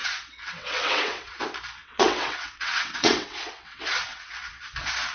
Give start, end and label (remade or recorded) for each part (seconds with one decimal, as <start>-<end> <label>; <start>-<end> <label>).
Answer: 0.0-1.4 remade; 1.4-1.8 recorded; 1.8-4.6 remade; 4.6-5.1 recorded